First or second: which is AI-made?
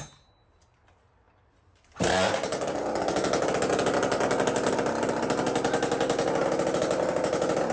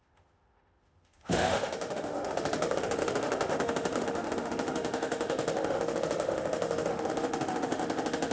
second